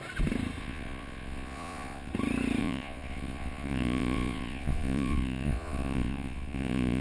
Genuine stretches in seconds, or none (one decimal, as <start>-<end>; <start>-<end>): 0.0-0.6; 2.1-2.6